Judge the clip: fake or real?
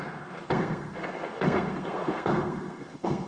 fake